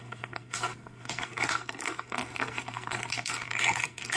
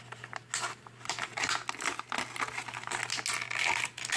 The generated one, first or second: first